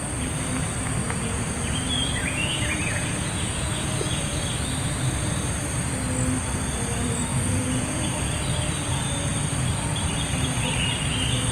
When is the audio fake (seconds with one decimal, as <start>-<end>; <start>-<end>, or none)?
1.0-1.6; 2.2-4.4; 7.3-8.1